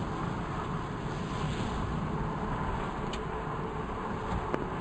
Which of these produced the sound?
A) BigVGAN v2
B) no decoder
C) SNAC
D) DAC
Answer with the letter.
B